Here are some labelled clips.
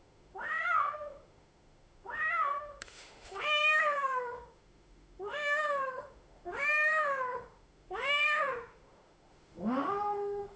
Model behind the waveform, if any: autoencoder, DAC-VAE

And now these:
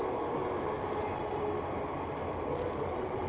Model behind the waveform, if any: none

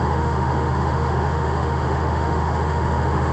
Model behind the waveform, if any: autoencoder, DAC-VAE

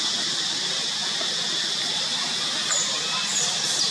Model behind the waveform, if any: none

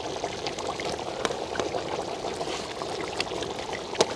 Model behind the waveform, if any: none